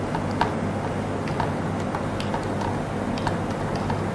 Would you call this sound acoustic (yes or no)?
yes